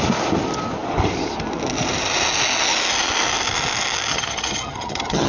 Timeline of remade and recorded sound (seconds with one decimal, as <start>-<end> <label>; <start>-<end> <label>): 0.0-4.1 recorded; 4.1-5.3 remade